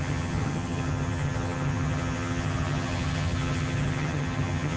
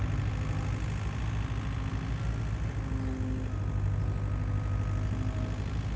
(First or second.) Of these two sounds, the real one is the second